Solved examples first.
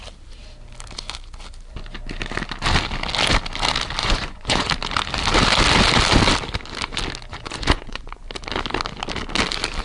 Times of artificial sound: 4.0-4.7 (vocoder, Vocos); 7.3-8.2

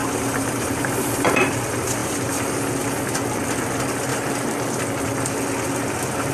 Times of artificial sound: 0.0-1.4 (vocoder, BigVGAN v2); 4.1-4.8

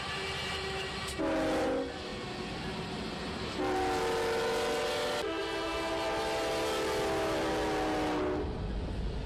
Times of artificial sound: none

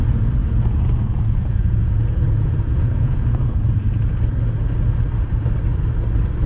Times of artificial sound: 0.4-3.4 (vocoder, Vocos)

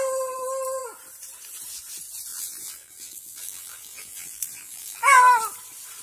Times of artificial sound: 2.3-5.2 (vocoder, BigVGAN v2)

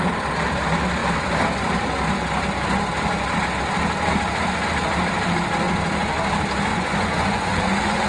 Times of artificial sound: 6.7-8.1 (vocoder, Vocos)